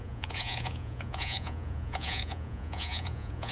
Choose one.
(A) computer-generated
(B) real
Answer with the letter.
A